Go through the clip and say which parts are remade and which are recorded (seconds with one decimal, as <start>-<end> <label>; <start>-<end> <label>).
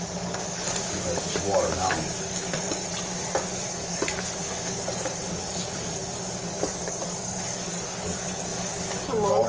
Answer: 0.0-2.9 remade; 2.9-3.5 recorded; 3.5-9.5 remade